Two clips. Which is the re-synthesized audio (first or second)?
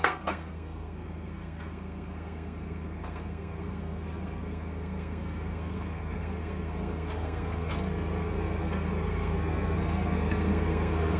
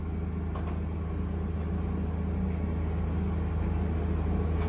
first